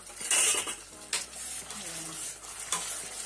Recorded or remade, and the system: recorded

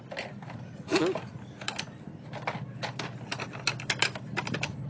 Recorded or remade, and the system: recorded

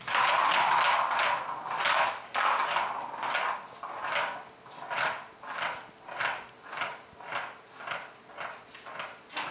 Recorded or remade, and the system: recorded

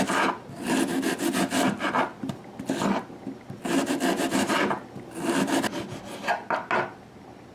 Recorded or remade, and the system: recorded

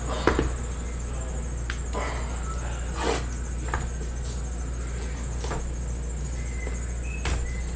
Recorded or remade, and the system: recorded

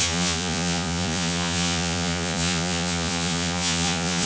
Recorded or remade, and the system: remade, vocoder, Vocos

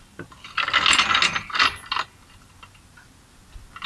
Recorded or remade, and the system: recorded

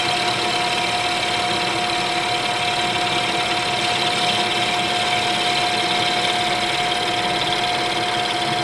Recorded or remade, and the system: recorded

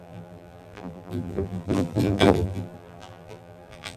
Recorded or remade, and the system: remade, vocoder, BigVGAN v2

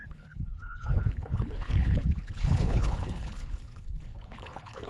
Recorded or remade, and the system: remade, codec, HILCodec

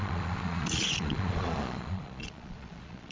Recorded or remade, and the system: remade, vocoder, Vocos